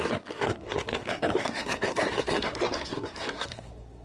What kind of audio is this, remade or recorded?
remade